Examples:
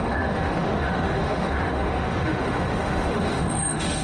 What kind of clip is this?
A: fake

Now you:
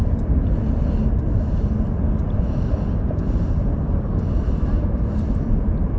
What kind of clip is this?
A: real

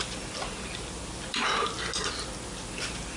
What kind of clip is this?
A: real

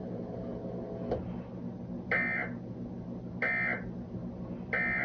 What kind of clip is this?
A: real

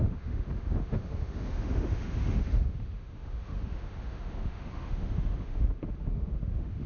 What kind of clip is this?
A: fake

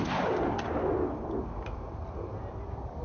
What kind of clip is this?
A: real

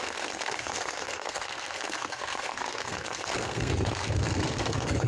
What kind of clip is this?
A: fake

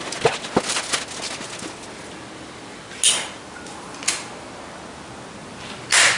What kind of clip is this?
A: real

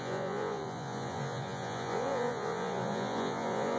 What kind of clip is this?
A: fake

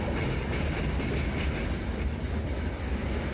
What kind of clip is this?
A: real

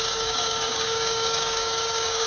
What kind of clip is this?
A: fake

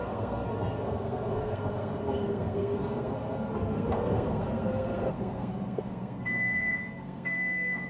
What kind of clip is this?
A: fake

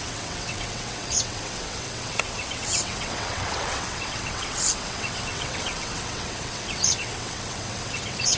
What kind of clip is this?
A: fake